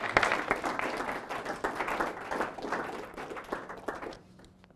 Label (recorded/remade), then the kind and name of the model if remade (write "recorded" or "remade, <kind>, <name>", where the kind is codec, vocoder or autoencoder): recorded